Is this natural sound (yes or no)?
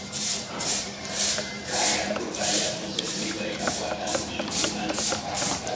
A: no